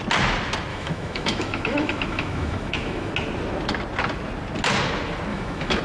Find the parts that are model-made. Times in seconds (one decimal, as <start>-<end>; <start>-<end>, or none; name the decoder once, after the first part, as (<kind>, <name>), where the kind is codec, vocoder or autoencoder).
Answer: 0.7-3.1 (autoencoder, DAC-VAE); 5.3-5.8